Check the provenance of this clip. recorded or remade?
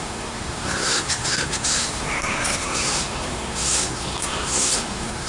remade